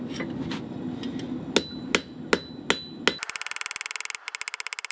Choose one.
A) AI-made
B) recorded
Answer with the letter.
B